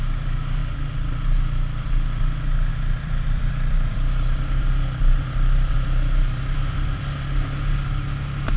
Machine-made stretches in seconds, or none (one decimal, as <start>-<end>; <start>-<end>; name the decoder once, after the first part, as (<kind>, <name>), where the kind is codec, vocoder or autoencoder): 0.6-2.2 (vocoder, BigVGAN v2); 2.7-7.0

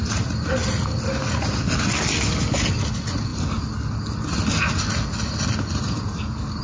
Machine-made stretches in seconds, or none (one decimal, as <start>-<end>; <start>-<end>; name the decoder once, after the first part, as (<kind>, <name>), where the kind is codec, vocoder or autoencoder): none

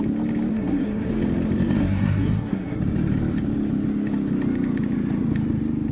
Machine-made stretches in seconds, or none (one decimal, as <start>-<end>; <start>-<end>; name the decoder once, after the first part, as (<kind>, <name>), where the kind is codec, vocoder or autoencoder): 0.5-1.1 (codec, SNAC); 1.8-2.8